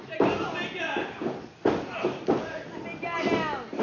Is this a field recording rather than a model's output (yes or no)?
yes